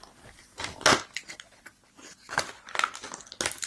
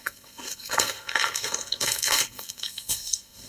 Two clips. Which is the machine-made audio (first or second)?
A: second